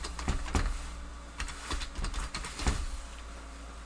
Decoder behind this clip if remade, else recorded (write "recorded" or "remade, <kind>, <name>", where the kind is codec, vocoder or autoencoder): recorded